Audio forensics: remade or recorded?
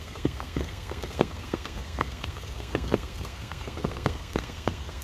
remade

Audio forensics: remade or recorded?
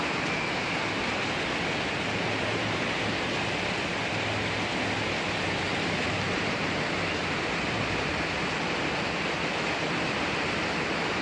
recorded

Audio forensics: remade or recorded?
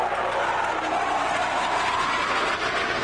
recorded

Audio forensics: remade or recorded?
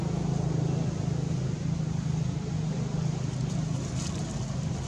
recorded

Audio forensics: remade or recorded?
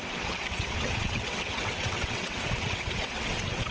remade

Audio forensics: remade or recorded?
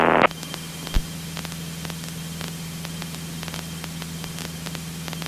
recorded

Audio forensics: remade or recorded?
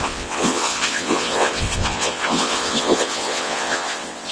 remade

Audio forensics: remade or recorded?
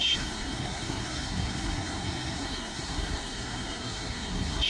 remade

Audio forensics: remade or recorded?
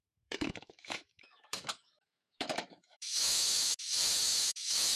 remade